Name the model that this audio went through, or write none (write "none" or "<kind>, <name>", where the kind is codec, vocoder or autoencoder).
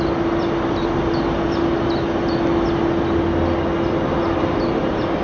none